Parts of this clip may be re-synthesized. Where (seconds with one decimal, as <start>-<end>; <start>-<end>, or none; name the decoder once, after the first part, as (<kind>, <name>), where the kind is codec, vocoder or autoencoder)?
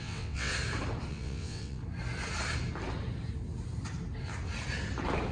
0.0-0.5 (vocoder, WaveNeXt); 1.1-1.8